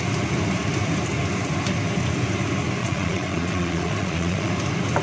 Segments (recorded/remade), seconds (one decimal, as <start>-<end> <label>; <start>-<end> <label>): 0.0-2.8 recorded; 2.8-4.5 remade; 4.5-5.0 recorded